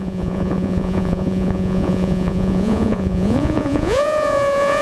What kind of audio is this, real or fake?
fake